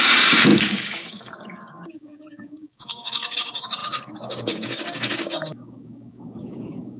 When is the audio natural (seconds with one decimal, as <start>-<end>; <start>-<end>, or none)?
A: none